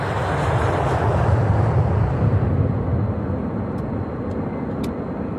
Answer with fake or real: real